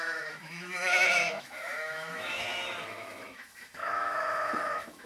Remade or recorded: remade